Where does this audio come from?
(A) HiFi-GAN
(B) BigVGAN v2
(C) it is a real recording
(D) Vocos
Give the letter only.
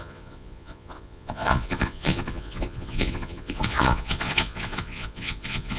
D